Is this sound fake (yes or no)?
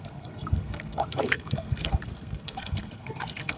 yes